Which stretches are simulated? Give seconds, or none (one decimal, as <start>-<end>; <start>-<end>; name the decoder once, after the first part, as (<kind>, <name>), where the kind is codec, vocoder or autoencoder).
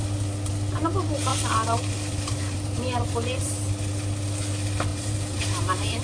1.3-3.5 (vocoder, BigVGAN v2); 4.9-6.0